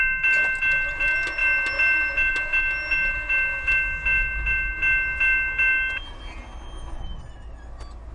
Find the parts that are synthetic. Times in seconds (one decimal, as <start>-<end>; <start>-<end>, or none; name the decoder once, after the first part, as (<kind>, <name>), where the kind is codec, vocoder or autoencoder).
none